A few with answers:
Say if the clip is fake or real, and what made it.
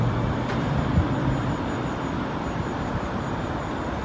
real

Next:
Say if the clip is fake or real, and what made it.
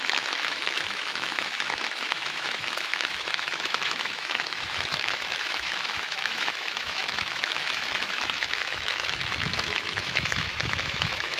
fake, autoencoder, DAC-VAE